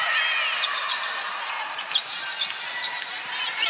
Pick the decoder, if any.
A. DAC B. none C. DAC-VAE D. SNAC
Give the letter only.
B